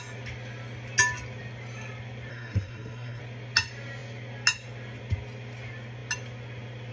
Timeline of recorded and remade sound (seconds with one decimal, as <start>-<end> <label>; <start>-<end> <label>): 0.0-2.3 recorded; 2.3-3.2 remade; 3.2-6.9 recorded

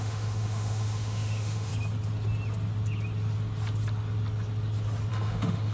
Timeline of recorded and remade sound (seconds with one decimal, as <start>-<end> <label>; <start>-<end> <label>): 0.0-1.7 remade; 1.7-5.1 recorded; 5.1-5.7 remade

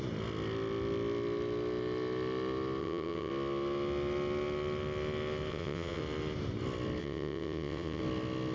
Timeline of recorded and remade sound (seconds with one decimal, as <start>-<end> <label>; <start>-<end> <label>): 0.0-2.8 recorded; 2.8-3.3 remade; 3.3-5.5 recorded; 5.5-6.0 remade; 6.0-7.0 recorded; 7.0-8.0 remade; 8.0-8.5 recorded

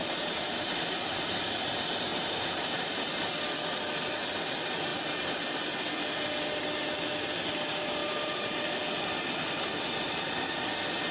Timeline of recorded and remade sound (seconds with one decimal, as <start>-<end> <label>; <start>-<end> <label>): 0.0-0.7 remade; 0.7-2.1 recorded; 2.1-3.1 remade; 3.1-8.0 recorded; 8.0-8.8 remade; 8.8-11.1 recorded

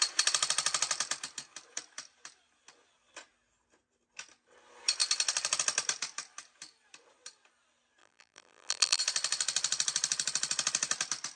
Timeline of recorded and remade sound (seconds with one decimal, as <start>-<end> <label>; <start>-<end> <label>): 0.0-8.0 recorded; 8.0-9.0 remade; 9.0-11.4 recorded

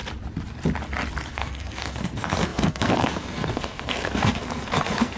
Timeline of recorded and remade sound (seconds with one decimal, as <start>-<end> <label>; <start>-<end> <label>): 0.0-1.3 recorded; 1.3-5.2 remade